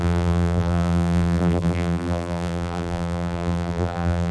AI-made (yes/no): yes